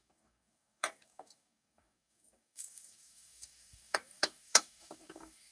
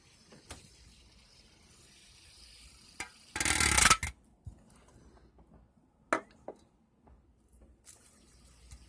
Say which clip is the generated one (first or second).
first